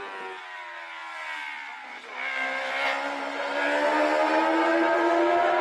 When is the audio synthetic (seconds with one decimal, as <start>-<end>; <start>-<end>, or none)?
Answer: none